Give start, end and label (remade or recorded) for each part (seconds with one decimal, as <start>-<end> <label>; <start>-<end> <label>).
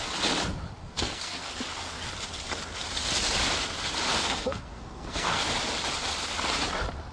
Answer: 0.0-0.8 recorded; 0.8-1.5 remade; 1.5-4.1 recorded; 4.1-5.4 remade; 5.4-7.1 recorded